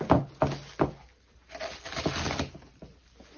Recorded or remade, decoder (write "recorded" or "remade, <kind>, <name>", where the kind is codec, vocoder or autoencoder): recorded